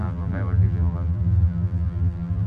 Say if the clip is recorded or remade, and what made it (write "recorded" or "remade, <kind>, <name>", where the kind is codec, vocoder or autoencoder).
remade, vocoder, BigVGAN v2